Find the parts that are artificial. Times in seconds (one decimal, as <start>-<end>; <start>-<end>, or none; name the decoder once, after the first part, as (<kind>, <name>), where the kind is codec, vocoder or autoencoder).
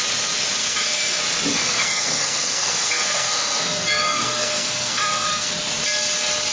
0.6-1.2 (codec, SNAC); 1.6-5.5